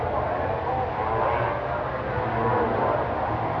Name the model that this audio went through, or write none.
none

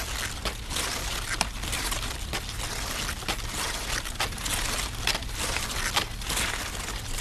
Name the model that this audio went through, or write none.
none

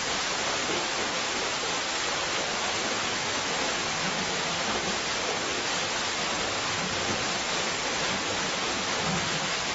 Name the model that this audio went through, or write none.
none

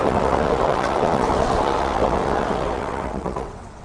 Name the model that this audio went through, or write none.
vocoder, WaveNeXt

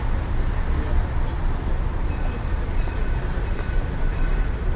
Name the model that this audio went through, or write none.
none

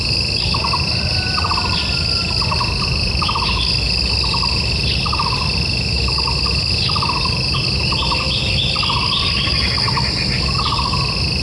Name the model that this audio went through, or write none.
none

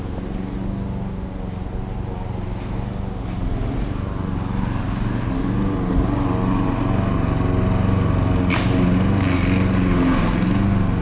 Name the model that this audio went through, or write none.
none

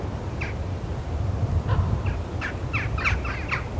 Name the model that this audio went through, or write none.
none